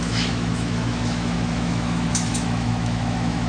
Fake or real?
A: fake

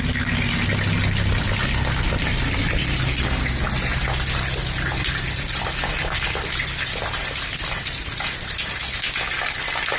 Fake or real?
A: real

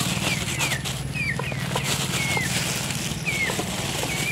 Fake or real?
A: real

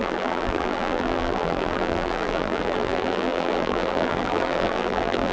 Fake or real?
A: fake